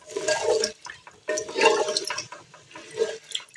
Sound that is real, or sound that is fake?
real